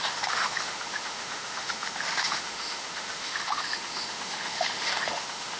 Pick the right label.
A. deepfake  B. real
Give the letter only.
A